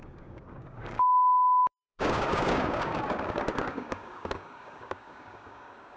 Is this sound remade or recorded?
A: remade